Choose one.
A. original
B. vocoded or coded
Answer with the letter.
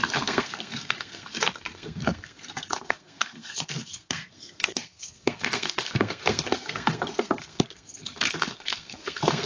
B